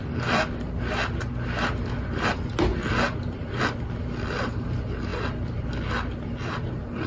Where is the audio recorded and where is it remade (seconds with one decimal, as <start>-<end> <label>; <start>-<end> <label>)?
0.0-7.1 recorded